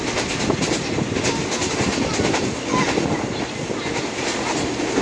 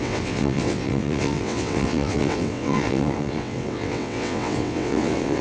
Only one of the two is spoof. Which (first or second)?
second